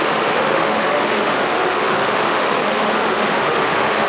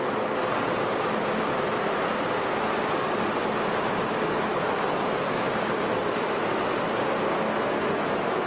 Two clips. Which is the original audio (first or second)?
second